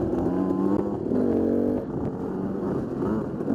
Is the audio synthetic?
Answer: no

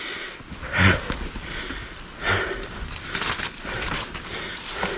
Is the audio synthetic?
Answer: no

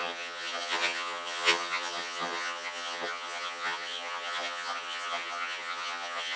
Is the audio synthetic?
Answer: yes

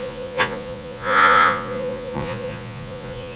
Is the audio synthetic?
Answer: yes